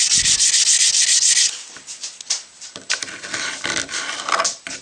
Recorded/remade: recorded